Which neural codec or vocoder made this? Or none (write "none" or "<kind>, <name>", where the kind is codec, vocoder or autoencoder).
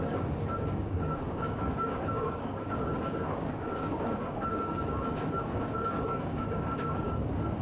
codec, DAC